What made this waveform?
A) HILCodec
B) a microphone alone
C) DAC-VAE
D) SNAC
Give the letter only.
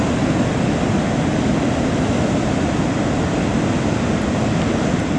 B